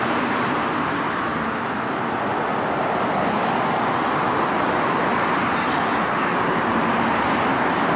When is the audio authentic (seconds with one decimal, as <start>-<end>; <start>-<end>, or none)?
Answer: 0.0-8.0